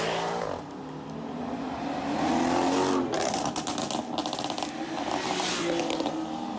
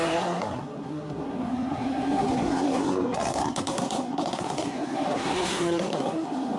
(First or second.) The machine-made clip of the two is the second